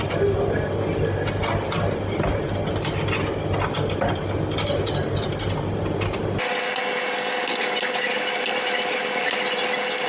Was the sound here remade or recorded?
recorded